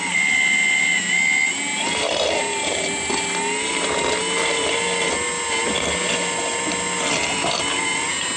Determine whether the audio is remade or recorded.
recorded